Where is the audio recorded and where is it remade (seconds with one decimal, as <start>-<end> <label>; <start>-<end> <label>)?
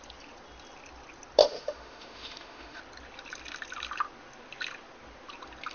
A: 0.0-1.4 recorded; 1.4-2.8 remade; 2.8-5.7 recorded